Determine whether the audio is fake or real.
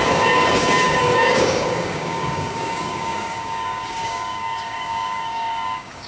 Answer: fake